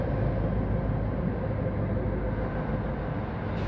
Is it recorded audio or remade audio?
recorded